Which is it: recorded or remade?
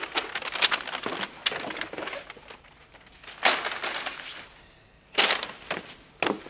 recorded